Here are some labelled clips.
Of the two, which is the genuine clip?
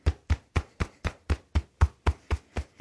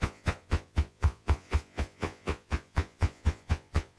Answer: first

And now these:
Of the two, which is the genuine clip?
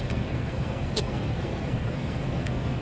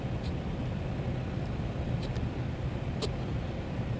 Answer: second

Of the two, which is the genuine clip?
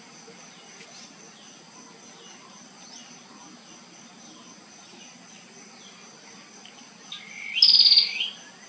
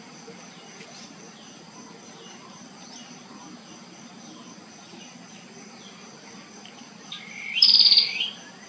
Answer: first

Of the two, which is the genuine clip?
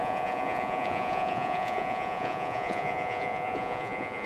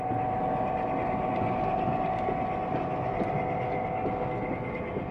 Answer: second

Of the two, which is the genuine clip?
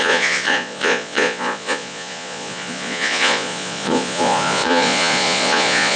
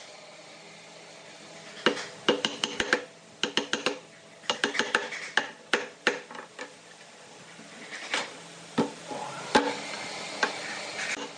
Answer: second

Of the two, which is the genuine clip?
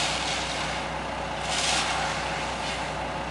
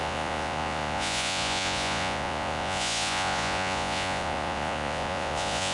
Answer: first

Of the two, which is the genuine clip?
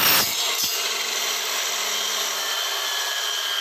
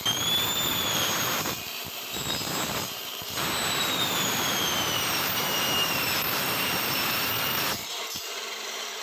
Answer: first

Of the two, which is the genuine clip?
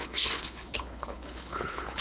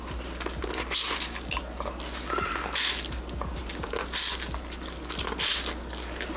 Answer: second